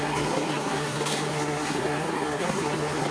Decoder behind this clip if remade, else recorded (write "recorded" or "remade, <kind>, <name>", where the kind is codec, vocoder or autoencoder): remade, codec, SNAC